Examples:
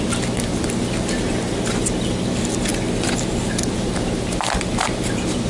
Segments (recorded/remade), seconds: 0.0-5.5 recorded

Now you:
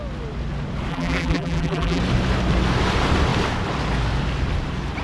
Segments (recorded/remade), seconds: 0.0-0.9 recorded; 0.9-2.0 remade; 2.0-5.0 recorded

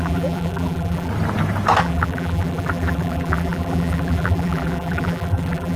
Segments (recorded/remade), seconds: 0.0-1.1 remade; 1.1-1.8 recorded; 1.8-5.8 remade

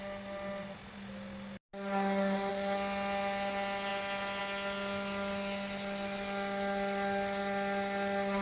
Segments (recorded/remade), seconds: 0.0-8.4 recorded

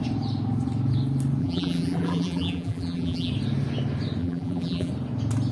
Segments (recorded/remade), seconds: 0.0-1.4 recorded; 1.4-3.3 remade; 3.3-4.2 recorded; 4.2-4.9 remade; 4.9-5.5 recorded

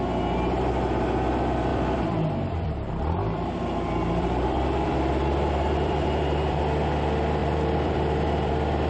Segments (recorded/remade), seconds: 0.0-1.7 recorded; 1.7-6.6 remade; 6.6-7.4 recorded; 7.4-8.5 remade; 8.5-8.9 recorded

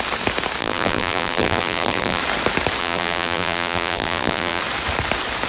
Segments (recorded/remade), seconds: 0.0-0.6 recorded; 0.6-2.2 remade; 2.2-2.8 recorded; 2.8-4.6 remade; 4.6-5.5 recorded

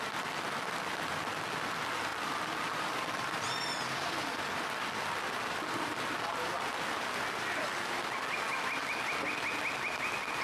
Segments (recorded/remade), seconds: 0.0-2.1 recorded; 2.1-6.0 remade; 6.0-10.4 recorded